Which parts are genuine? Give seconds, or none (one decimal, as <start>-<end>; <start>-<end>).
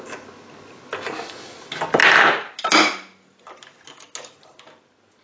0.0-5.2